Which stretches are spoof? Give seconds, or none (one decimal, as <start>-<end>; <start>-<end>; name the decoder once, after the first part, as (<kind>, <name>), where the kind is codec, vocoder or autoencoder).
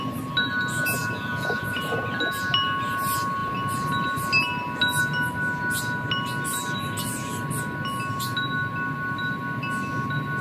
1.0-1.8 (vocoder, Vocos)